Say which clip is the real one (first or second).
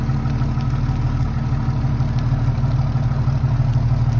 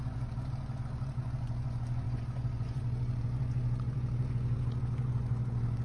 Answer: first